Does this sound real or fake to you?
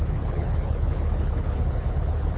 fake